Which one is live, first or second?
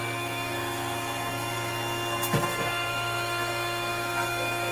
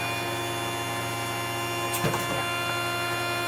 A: second